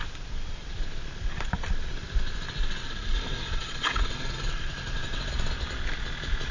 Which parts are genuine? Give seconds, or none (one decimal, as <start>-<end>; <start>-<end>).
0.0-2.8; 5.3-6.5